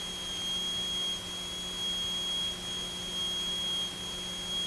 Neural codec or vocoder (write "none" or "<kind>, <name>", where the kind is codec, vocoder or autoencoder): none